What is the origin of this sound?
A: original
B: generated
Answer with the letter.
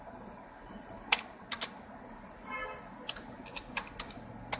A